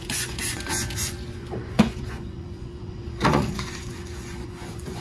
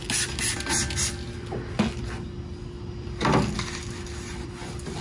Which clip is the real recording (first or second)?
second